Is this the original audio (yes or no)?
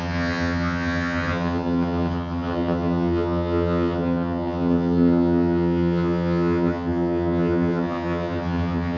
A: no